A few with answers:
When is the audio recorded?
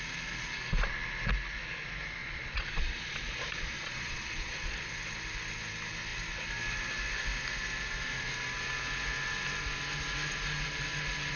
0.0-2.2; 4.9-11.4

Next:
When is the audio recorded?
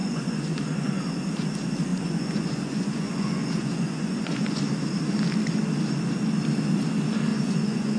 1.0-1.9; 4.6-7.3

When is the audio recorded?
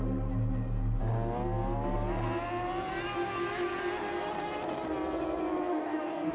0.0-5.7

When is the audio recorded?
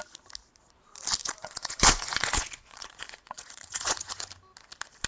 0.0-1.2; 4.3-5.1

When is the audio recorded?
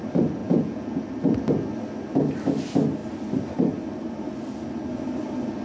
0.0-0.4; 1.0-5.6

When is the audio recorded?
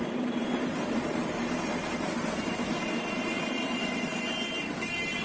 1.8-3.4; 4.1-5.2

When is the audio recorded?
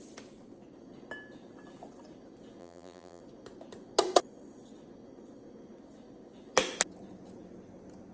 0.0-2.6; 3.2-8.1